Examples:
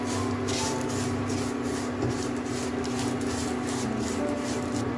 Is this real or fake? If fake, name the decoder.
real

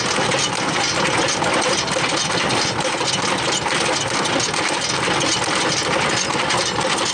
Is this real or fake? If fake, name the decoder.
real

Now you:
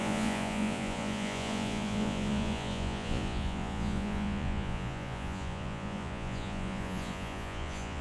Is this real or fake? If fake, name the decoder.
fake, vocoder, Vocos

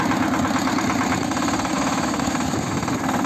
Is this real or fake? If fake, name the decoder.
real